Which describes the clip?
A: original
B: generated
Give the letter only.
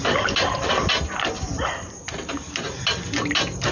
A